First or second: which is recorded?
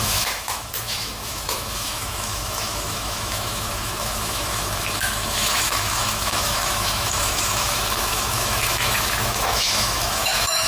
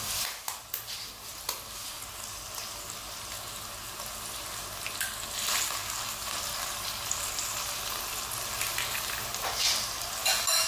second